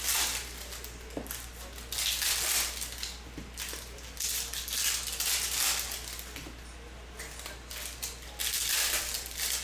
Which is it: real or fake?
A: real